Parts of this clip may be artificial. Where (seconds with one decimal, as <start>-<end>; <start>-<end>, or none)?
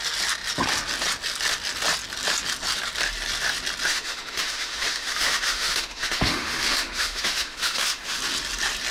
3.9-8.2